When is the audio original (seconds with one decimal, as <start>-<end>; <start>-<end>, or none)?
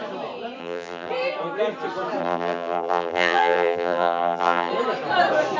0.0-0.6; 1.1-2.2; 4.7-5.6